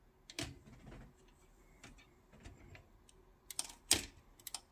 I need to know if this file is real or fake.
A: real